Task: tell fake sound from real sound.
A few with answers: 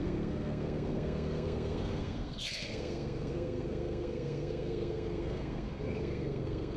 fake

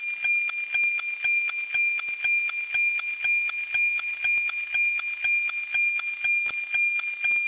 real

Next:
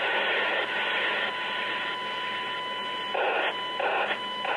real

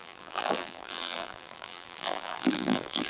fake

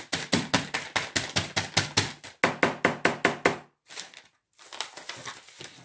real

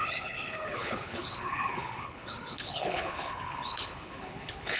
fake